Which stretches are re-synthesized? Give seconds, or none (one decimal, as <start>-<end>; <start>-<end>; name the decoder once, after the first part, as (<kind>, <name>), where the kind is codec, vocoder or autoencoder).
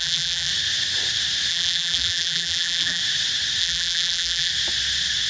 0.0-0.5 (vocoder, BigVGAN v2); 1.5-3.0; 3.6-4.5